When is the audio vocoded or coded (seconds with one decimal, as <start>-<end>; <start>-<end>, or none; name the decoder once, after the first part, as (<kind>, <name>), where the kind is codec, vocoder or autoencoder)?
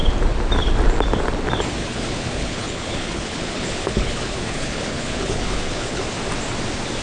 1.8-6.0 (codec, HILCodec)